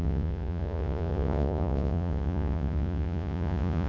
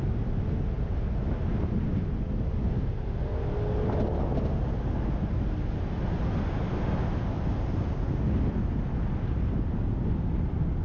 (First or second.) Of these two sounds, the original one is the second